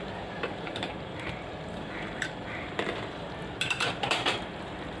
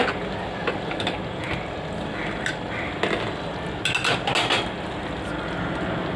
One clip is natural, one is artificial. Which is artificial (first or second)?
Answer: first